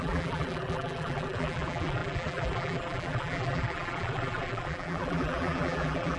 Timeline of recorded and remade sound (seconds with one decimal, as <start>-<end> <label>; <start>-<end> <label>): 0.0-6.2 remade